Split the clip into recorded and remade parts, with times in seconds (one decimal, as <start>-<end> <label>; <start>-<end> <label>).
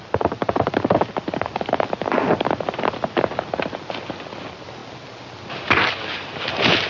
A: 0.0-6.9 recorded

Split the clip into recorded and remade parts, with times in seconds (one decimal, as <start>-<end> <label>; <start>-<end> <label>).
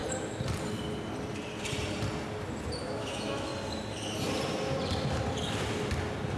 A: 0.0-2.8 recorded; 2.8-3.5 remade; 3.5-6.4 recorded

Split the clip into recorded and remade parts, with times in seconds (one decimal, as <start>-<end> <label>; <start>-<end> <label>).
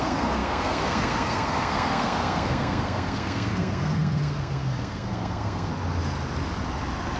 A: 0.0-5.7 remade; 5.7-7.2 recorded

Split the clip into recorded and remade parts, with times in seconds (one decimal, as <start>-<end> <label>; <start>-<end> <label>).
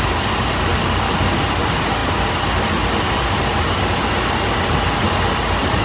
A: 0.0-5.8 recorded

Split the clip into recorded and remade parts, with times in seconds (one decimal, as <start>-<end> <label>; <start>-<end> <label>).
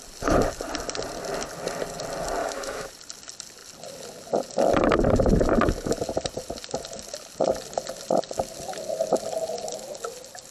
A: 0.0-2.4 recorded; 2.4-2.9 remade; 2.9-10.5 recorded